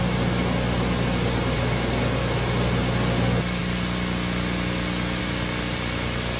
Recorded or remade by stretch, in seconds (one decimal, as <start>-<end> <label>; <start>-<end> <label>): 0.0-6.4 recorded